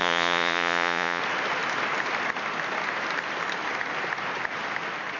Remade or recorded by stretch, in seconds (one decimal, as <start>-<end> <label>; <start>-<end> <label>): 0.0-1.2 remade; 1.2-5.2 recorded